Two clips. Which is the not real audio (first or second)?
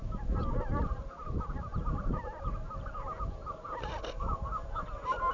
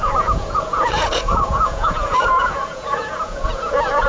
second